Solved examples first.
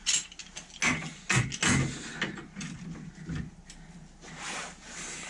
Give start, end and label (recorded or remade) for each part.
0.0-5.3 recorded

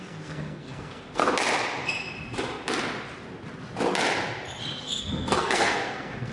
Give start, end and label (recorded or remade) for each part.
0.0-1.2 remade; 1.2-5.0 recorded; 5.0-6.3 remade

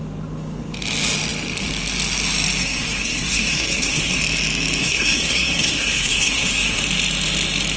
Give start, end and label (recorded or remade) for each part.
0.0-2.6 recorded; 2.6-4.2 remade; 4.2-4.8 recorded; 4.8-6.8 remade; 6.8-7.8 recorded

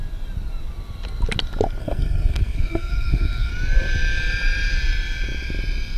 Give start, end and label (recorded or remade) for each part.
0.0-1.8 recorded; 1.8-3.5 remade; 3.5-6.0 recorded

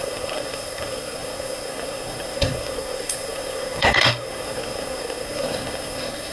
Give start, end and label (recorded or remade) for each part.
0.0-6.3 remade

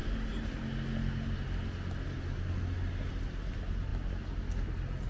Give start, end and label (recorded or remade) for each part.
0.0-5.1 recorded

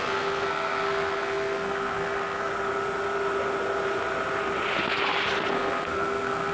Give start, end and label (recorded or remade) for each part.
0.0-2.5 remade; 2.5-5.5 recorded; 5.5-6.5 remade